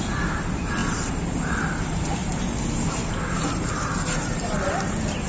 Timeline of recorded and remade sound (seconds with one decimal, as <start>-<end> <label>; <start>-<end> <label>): 0.0-5.3 recorded